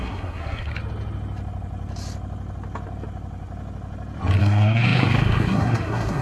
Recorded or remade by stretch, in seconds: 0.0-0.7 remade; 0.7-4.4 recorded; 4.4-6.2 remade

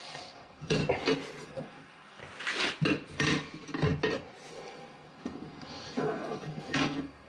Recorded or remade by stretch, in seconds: 0.0-0.8 remade; 0.8-1.4 recorded; 1.4-2.2 remade; 2.2-4.5 recorded; 4.5-7.3 remade

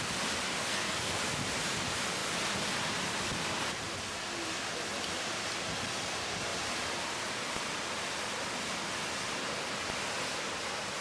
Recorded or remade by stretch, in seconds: 0.0-0.6 recorded; 0.6-1.2 remade; 1.2-11.0 recorded